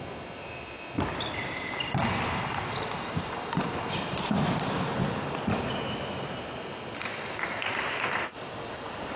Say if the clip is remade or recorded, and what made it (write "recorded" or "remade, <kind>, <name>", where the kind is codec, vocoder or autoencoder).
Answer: recorded